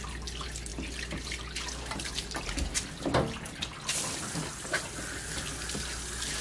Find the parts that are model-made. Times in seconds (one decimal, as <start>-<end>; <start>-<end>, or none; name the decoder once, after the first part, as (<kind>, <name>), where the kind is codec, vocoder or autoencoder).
none

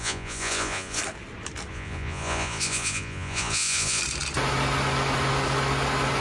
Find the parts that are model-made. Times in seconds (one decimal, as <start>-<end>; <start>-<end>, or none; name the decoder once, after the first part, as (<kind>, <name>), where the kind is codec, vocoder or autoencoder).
0.0-1.0 (vocoder, Vocos); 1.7-4.0

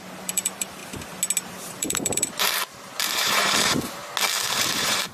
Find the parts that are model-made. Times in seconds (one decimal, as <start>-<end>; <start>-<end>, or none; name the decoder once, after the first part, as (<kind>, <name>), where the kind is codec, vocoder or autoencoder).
0.0-0.8 (vocoder, BigVGAN v2); 1.5-4.0; 4.6-5.1

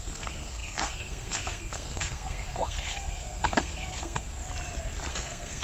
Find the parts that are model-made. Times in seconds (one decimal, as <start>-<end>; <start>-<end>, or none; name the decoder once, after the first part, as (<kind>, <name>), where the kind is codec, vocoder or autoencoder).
0.0-4.4 (codec, SNAC); 5.1-5.6

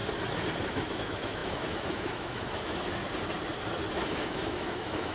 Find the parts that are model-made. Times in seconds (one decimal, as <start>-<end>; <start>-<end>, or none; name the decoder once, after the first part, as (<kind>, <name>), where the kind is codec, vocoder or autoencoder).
0.7-3.0 (autoencoder, DAC-VAE); 3.9-5.1

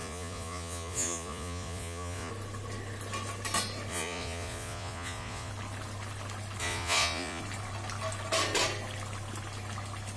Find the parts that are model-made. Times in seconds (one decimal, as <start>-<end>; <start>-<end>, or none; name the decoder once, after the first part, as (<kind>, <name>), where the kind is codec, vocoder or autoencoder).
0.0-2.3 (vocoder, Vocos); 3.9-5.5; 6.6-7.4

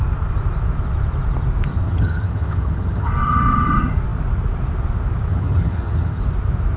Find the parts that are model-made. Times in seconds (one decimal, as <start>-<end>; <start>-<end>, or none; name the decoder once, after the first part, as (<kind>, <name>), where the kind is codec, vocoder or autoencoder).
1.7-3.1 (vocoder, HiFi-GAN); 5.3-6.2

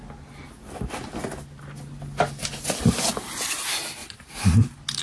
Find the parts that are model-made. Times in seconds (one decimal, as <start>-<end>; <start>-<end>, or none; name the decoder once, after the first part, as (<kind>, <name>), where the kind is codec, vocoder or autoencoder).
4.0-4.6 (vocoder, BigVGAN v2)